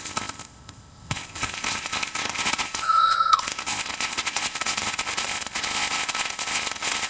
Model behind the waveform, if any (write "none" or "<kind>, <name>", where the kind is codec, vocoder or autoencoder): codec, ZipCodec